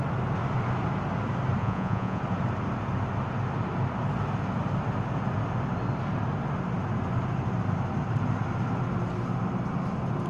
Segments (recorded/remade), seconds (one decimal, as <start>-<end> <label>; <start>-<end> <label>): 0.0-1.6 recorded; 1.6-2.2 remade; 2.2-10.3 recorded